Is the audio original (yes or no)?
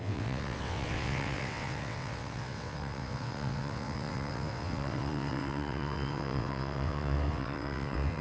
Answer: no